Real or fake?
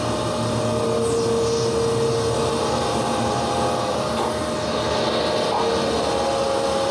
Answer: real